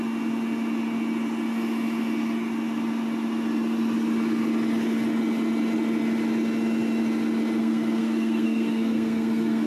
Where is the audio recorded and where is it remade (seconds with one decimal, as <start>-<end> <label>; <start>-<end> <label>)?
0.0-7.6 recorded; 7.6-9.7 remade